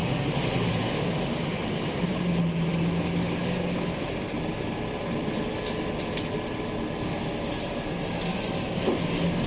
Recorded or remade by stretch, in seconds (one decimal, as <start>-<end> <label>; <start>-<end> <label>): 0.0-9.5 recorded